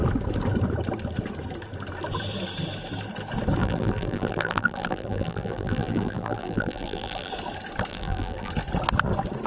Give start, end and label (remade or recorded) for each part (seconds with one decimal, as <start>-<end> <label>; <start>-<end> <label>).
0.0-3.6 recorded; 3.6-7.3 remade; 7.3-7.9 recorded; 7.9-8.5 remade; 8.5-9.5 recorded